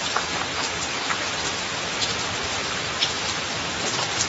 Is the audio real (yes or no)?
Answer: no